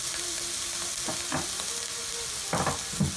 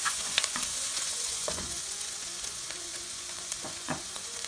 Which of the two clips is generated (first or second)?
second